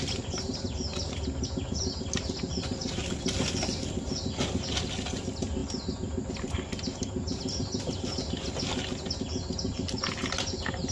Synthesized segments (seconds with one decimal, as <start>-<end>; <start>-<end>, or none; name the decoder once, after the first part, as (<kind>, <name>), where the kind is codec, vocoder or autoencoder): none